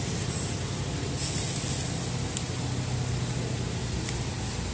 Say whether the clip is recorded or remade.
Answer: recorded